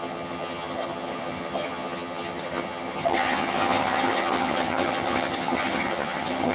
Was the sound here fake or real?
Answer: fake